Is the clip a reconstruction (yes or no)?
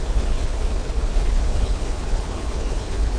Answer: yes